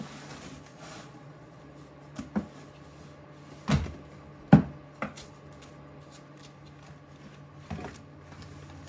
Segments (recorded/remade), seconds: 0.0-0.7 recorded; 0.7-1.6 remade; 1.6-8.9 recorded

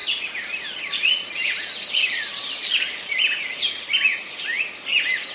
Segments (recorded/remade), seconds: 0.0-5.3 recorded

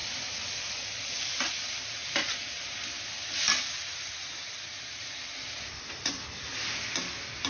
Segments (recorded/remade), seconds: 0.0-1.5 remade; 1.5-2.0 recorded; 2.0-6.2 remade; 6.2-7.5 recorded